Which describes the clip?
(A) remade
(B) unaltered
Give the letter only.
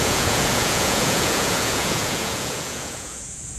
A